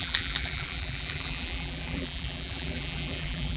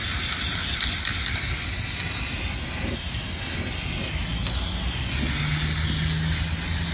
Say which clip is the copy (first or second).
first